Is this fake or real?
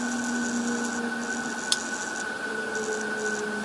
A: real